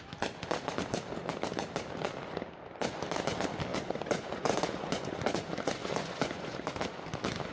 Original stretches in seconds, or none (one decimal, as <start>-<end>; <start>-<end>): 0.0-3.7; 6.7-7.5